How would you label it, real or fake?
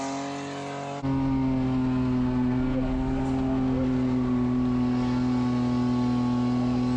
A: real